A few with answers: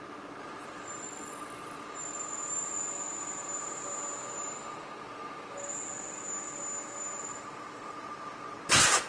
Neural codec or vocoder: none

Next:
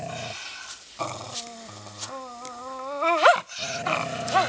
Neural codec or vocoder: none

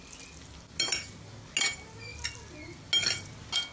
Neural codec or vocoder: none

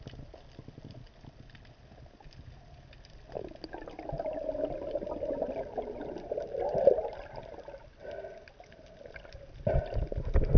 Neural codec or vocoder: none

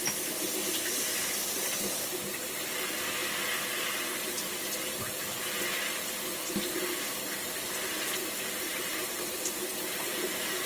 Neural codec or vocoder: none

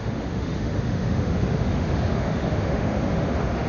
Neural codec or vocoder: autoencoder, DAC-VAE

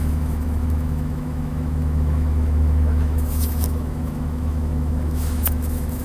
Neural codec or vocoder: autoencoder, DAC-VAE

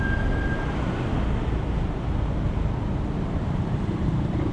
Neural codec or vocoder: none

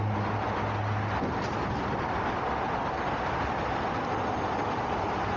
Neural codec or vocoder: none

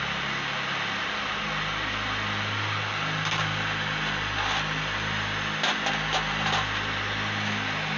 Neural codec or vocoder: none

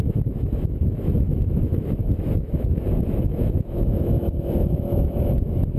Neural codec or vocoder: autoencoder, DAC-VAE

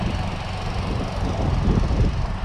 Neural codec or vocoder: none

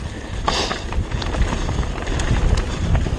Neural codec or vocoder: none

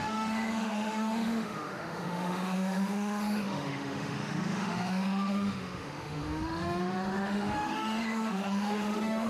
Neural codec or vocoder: autoencoder, DAC-VAE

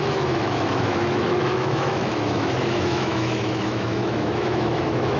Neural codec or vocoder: autoencoder, DAC-VAE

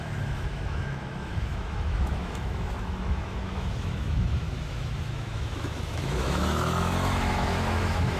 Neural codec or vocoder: autoencoder, DAC-VAE